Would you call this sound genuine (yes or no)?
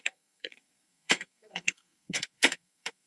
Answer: no